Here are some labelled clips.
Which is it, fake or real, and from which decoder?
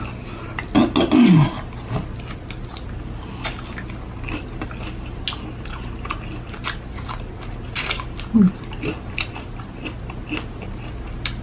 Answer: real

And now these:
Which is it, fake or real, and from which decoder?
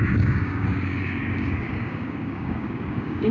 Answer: fake, codec, DAC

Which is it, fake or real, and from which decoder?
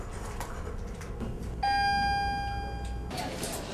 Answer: real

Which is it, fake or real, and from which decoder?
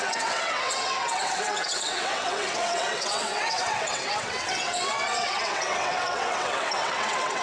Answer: fake, vocoder, WaveNeXt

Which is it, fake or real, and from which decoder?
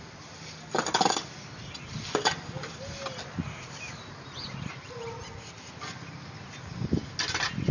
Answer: real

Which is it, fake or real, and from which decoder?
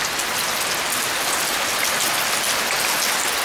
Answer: real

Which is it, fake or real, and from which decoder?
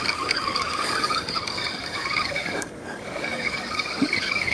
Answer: fake, codec, DAC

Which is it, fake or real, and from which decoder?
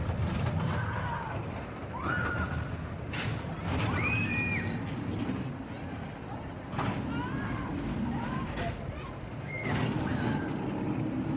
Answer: real